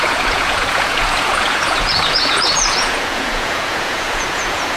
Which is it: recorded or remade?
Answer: remade